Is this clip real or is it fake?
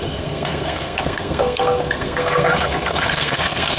fake